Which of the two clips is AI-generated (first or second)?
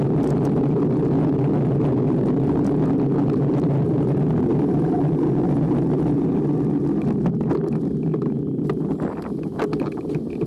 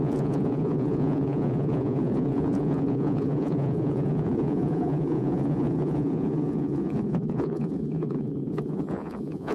second